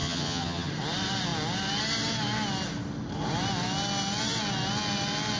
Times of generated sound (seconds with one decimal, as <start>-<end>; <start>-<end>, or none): 0.0-0.7